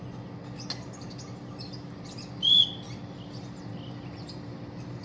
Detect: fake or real real